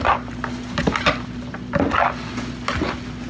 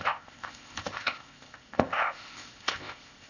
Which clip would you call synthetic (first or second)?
second